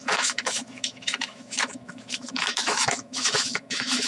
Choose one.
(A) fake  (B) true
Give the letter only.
A